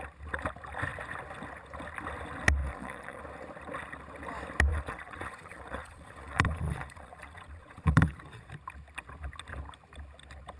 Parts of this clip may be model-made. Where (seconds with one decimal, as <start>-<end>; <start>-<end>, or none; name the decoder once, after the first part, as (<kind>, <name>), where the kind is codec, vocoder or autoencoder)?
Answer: 2.6-3.2 (vocoder, Vocos); 4.7-8.5